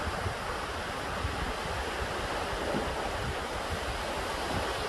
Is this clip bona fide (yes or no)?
yes